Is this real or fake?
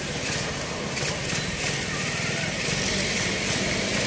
real